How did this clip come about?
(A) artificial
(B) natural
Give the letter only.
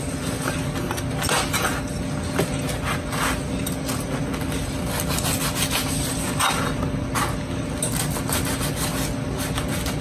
B